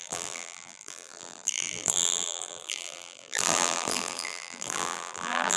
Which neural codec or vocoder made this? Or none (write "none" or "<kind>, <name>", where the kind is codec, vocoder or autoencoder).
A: vocoder, BigVGAN v2